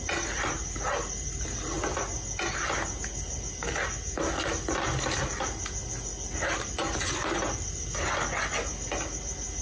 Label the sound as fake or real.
real